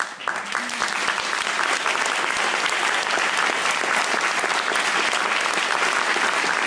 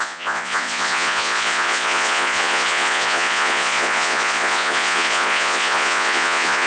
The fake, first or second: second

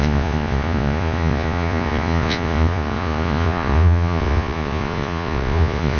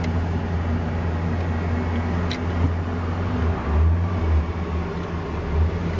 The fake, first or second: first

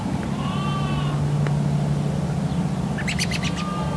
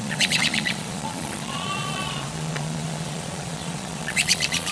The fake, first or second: second